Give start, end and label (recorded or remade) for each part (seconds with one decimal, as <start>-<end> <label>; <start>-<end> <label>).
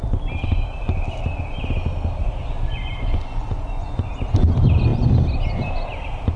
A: 0.0-2.7 recorded; 2.7-4.1 remade; 4.1-6.4 recorded